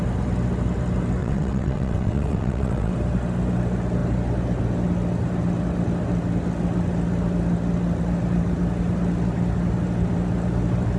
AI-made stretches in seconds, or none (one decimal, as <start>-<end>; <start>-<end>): 1.2-2.9